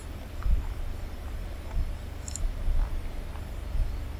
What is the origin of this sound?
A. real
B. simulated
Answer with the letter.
B